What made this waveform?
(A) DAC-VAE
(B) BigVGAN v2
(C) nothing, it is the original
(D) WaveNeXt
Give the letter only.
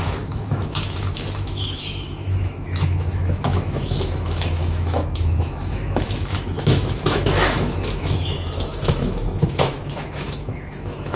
A